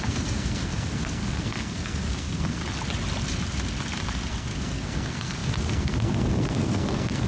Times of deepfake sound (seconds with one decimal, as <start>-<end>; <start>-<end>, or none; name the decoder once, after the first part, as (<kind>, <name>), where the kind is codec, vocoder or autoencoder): 0.0-2.6 (codec, SNAC); 4.3-7.3